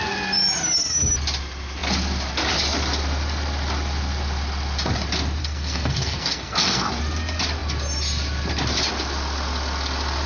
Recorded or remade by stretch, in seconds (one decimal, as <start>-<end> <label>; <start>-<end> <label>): 0.0-5.4 recorded; 5.4-6.9 remade; 6.9-10.3 recorded